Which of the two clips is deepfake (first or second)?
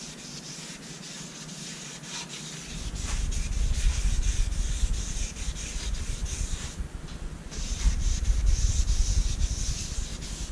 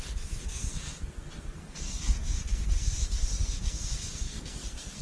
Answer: second